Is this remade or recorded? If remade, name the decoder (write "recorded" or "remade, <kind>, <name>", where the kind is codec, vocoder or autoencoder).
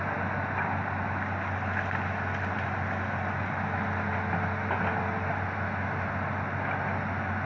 recorded